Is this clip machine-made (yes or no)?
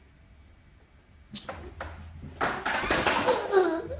no